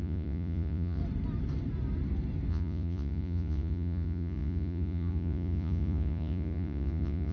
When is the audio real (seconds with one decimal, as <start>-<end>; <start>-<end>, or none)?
1.0-2.5